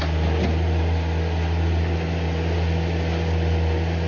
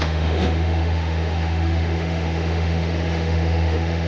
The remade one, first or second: second